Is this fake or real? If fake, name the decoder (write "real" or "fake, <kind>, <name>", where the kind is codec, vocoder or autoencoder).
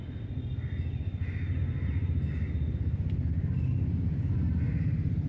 real